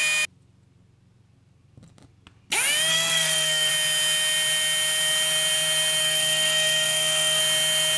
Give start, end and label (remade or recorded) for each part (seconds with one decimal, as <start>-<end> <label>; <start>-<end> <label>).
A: 0.0-2.9 recorded; 2.9-3.7 remade; 3.7-6.0 recorded; 6.0-7.4 remade; 7.4-8.0 recorded